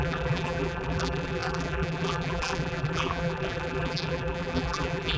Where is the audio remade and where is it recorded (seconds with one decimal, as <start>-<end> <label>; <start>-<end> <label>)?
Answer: 0.0-5.2 remade